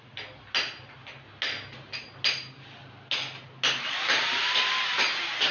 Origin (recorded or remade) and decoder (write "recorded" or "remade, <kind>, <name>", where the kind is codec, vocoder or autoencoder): recorded